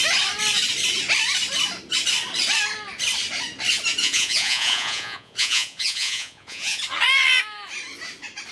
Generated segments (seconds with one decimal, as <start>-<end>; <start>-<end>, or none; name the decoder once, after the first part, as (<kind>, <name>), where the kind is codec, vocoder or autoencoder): 4.0-6.8 (vocoder, Vocos)